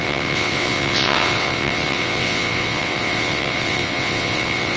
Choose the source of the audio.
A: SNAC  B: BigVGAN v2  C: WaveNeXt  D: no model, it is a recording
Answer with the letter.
C